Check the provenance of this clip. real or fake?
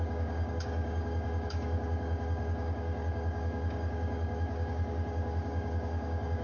fake